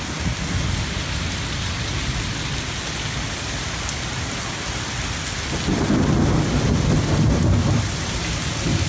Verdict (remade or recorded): recorded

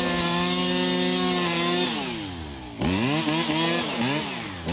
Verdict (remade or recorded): recorded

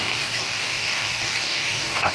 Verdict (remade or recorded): remade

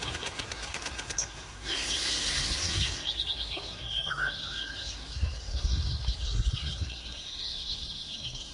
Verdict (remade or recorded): remade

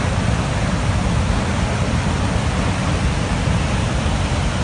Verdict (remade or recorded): recorded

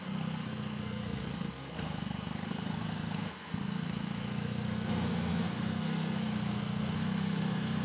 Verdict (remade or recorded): remade